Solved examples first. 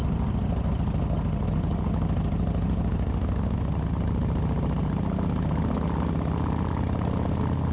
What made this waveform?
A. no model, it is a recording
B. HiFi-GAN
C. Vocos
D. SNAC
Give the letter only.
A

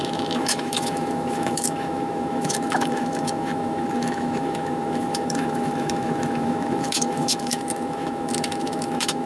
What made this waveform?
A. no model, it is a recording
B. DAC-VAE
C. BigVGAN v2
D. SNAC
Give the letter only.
B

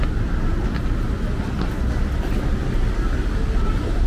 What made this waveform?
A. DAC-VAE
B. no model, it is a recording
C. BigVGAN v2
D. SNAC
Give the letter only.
B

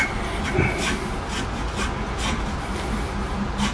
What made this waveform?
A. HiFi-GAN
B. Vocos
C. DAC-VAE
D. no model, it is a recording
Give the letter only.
D